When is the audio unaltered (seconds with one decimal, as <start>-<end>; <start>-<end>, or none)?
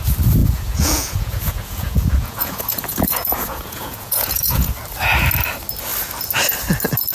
0.0-0.4; 4.7-7.1